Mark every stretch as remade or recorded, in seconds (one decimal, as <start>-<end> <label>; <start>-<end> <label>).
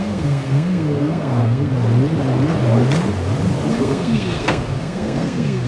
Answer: 0.0-1.7 remade; 1.7-3.7 recorded; 3.7-5.7 remade